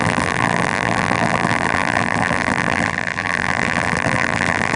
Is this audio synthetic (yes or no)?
yes